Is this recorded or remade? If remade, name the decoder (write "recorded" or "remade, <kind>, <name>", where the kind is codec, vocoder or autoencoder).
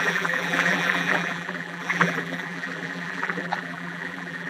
remade, vocoder, BigVGAN v2